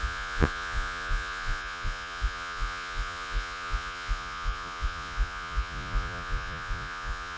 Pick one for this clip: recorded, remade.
remade